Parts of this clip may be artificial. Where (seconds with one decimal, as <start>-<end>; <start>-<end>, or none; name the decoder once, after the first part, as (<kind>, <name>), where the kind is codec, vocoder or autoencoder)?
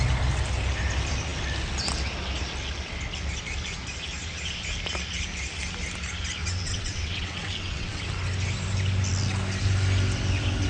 6.4-8.0 (vocoder, WaveNeXt)